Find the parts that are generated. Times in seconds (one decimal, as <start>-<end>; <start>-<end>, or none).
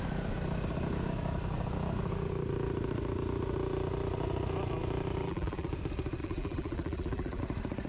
5.2-5.7; 6.2-7.4